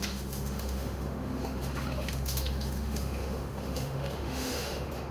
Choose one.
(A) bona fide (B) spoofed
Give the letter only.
B